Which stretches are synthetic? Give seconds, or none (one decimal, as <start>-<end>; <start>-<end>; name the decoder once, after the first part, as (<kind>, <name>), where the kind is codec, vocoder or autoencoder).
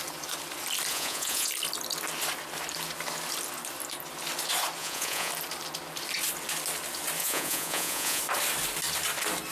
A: 0.9-1.5 (vocoder, Vocos); 4.8-5.3; 7.2-8.2